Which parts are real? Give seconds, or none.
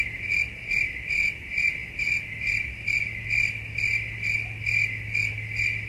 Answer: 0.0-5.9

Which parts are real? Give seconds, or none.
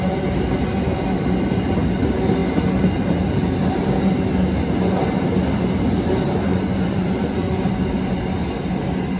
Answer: 0.0-6.5; 7.7-9.2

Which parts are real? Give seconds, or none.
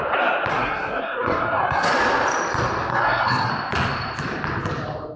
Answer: 0.0-0.5; 1.9-2.9; 3.5-5.2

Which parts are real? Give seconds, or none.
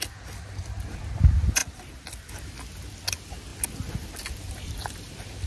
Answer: 0.0-5.5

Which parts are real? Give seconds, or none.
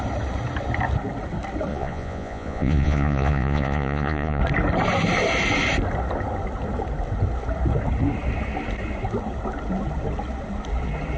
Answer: 0.0-1.7; 4.4-11.2